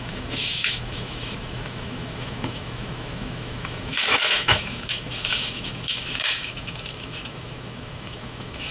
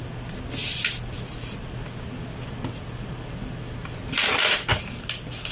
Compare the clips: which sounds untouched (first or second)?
second